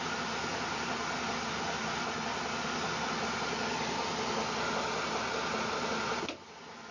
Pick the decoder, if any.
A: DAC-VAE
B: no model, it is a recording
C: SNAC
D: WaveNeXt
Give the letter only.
B